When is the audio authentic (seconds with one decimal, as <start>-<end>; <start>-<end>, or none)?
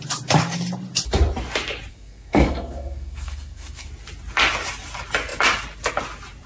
0.0-1.9; 3.9-6.5